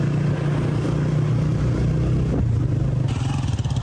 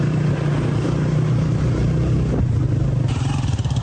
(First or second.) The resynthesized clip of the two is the second